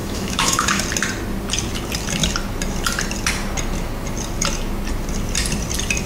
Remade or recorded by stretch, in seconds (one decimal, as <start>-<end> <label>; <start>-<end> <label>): 0.0-0.8 remade; 0.8-6.1 recorded

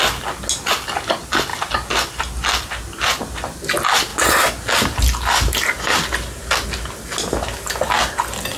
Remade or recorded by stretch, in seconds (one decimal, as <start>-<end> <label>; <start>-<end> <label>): 0.0-8.6 recorded

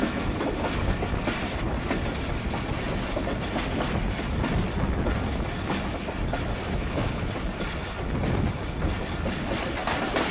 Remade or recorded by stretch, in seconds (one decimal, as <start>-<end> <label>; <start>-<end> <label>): 0.0-0.5 remade; 0.5-6.6 recorded; 6.6-7.3 remade; 7.3-10.3 recorded